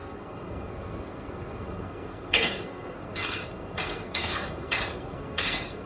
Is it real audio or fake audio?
fake